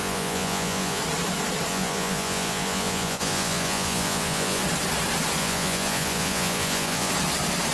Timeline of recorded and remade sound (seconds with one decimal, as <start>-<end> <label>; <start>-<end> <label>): 0.0-1.0 remade; 1.0-1.7 recorded; 1.7-4.6 remade; 4.6-5.4 recorded; 5.4-7.1 remade; 7.1-7.7 recorded

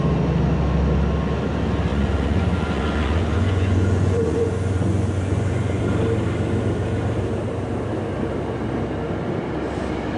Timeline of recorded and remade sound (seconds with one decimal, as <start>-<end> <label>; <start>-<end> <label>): 0.0-1.9 recorded; 1.9-5.8 remade; 5.8-10.2 recorded